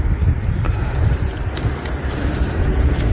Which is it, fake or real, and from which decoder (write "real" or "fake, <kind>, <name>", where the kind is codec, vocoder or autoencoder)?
real